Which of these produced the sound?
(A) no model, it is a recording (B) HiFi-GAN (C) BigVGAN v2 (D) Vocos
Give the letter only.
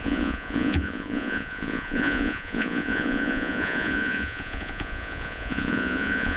D